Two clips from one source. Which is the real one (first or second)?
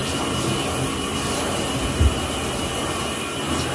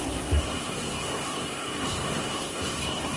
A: first